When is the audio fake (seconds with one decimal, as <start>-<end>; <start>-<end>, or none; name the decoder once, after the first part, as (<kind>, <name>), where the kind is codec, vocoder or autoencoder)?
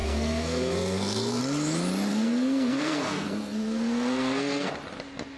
0.0-1.4 (codec, SNAC); 2.1-4.7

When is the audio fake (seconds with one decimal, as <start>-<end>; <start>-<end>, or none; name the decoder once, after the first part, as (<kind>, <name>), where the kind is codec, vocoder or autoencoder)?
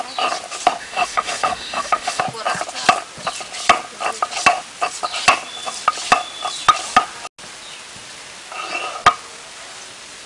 0.8-2.2 (autoencoder, DAC-VAE)